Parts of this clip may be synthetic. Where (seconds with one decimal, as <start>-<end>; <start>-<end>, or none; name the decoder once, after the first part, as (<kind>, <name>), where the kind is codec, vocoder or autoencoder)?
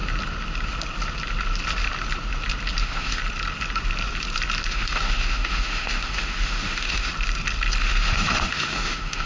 2.8-3.2 (autoencoder, DAC-VAE); 4.7-7.1; 7.8-9.3